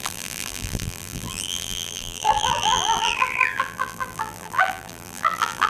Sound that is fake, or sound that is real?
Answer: fake